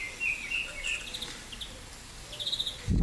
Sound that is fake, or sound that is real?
real